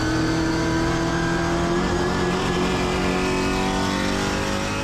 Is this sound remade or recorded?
recorded